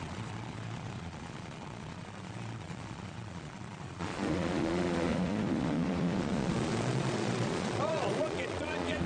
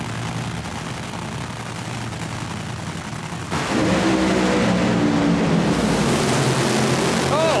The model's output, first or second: first